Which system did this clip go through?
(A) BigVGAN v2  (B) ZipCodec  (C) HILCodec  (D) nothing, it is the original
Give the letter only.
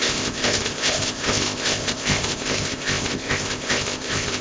B